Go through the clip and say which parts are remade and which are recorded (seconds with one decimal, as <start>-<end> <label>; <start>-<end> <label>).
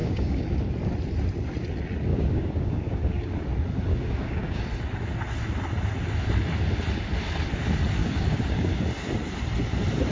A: 0.0-0.7 remade; 0.7-2.1 recorded; 2.1-3.3 remade; 3.3-3.9 recorded; 3.9-4.6 remade; 4.6-8.0 recorded; 8.0-8.8 remade; 8.8-10.1 recorded